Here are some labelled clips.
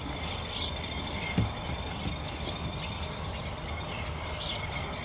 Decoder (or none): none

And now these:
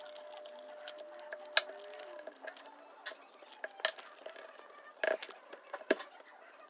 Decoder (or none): none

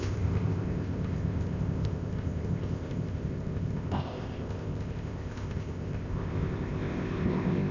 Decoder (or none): codec, ZipCodec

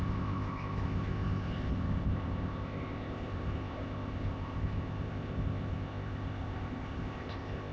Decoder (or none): codec, ZipCodec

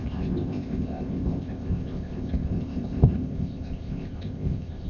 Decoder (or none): codec, ZipCodec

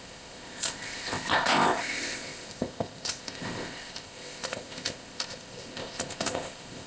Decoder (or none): codec, ZipCodec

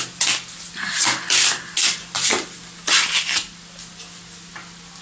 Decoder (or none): none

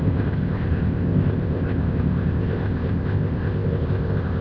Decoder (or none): codec, ZipCodec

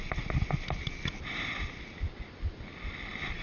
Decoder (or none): none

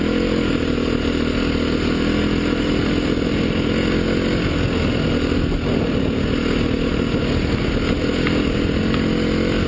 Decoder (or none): none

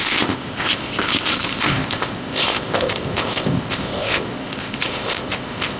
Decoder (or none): codec, ZipCodec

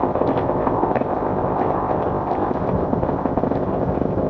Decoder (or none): codec, ZipCodec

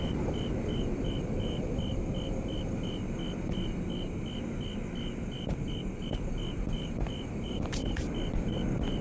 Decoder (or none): none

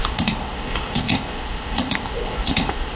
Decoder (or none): codec, ZipCodec